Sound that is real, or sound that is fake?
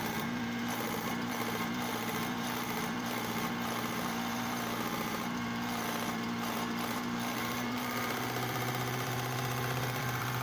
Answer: fake